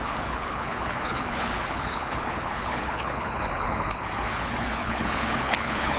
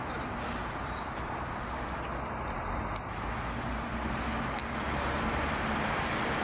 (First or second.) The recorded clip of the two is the second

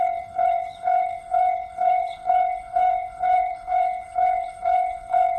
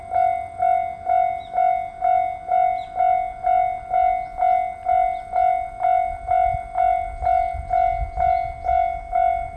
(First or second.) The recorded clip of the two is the second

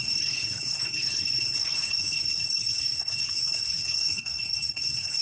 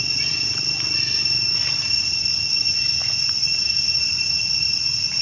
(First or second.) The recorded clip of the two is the second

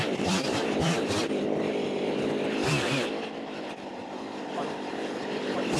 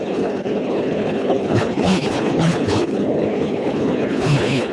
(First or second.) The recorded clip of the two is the first